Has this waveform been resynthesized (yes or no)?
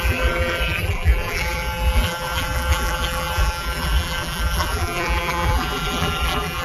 yes